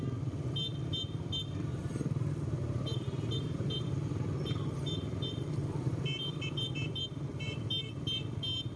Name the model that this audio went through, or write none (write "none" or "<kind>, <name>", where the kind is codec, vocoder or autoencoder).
vocoder, BigVGAN v2